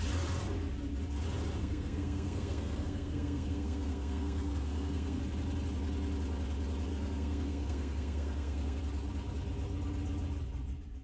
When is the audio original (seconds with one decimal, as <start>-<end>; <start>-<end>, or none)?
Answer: 0.0-1.6; 5.2-6.9; 8.8-11.0